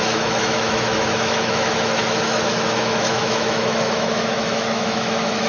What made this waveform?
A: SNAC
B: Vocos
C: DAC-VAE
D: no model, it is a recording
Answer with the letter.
C